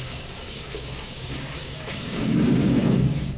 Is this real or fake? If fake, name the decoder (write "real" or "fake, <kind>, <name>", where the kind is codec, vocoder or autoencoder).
fake, codec, DAC